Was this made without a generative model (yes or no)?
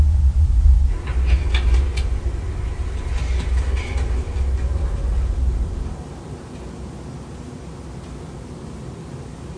yes